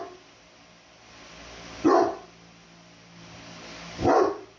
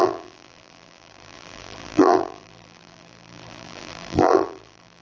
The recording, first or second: first